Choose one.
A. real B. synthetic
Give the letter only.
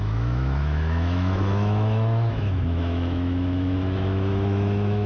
B